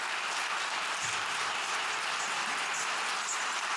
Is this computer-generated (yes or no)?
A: no